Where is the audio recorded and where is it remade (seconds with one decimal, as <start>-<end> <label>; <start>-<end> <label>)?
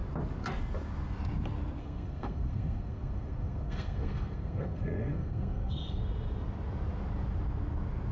0.0-1.8 recorded; 1.8-6.0 remade; 6.0-8.1 recorded